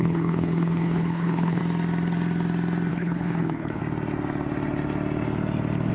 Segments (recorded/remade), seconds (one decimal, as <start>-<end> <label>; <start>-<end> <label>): 0.0-1.6 remade; 1.6-2.9 recorded; 2.9-3.8 remade; 3.8-5.9 recorded